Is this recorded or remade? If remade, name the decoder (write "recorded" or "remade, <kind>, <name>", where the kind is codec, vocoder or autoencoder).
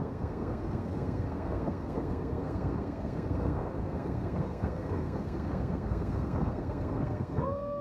remade, codec, SNAC